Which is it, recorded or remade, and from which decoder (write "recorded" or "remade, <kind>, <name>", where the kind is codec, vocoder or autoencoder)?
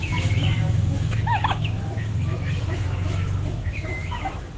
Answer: remade, autoencoder, DAC-VAE